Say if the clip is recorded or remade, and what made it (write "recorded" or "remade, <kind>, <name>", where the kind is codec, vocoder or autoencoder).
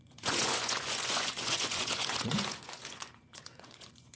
remade, vocoder, Vocos